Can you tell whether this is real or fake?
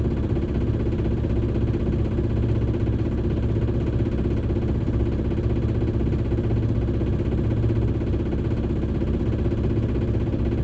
real